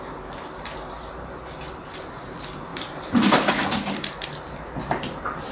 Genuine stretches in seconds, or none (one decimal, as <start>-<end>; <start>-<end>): 0.0-2.7; 3.5-4.8